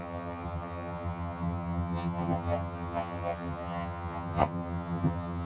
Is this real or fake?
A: fake